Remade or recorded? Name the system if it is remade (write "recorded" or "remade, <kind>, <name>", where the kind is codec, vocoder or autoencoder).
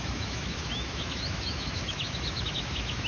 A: remade, autoencoder, DAC-VAE